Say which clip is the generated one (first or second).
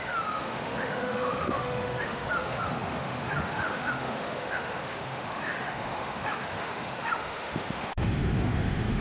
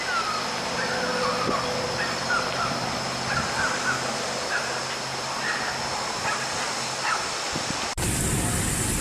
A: first